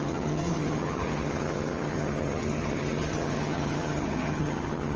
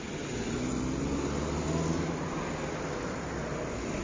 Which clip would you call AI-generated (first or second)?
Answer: first